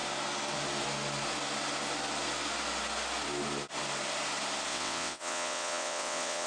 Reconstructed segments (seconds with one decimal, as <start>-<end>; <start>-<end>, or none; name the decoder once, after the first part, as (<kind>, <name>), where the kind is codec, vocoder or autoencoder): 4.7-6.5 (vocoder, WaveNeXt)